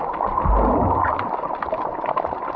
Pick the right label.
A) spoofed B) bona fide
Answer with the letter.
B